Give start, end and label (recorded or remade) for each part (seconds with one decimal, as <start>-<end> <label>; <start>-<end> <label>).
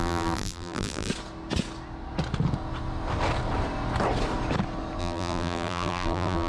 0.0-1.1 remade; 1.1-5.0 recorded; 5.0-6.5 remade